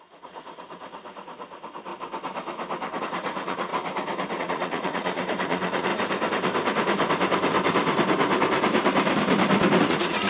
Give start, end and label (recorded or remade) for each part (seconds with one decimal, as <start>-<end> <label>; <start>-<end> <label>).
0.0-1.9 remade; 1.9-3.0 recorded; 3.0-3.7 remade; 3.7-4.4 recorded; 4.4-5.9 remade; 5.9-9.8 recorded; 9.8-10.3 remade